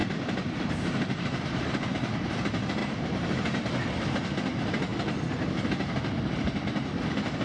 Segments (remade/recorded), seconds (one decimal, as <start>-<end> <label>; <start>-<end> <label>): 0.0-1.7 remade; 1.7-2.8 recorded; 2.8-3.6 remade; 3.6-7.4 recorded